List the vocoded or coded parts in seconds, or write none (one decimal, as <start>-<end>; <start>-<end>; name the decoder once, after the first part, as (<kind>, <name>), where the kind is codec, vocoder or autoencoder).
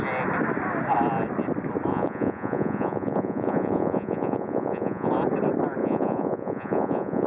1.9-5.1 (vocoder, Vocos); 5.8-7.3